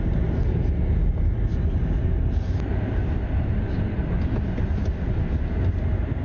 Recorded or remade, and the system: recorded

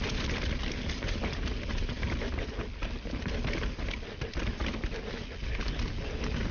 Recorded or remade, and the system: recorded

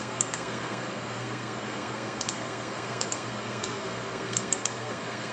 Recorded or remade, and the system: remade, codec, SNAC